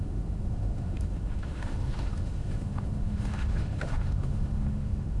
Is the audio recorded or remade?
remade